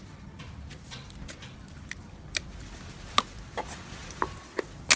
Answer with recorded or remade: recorded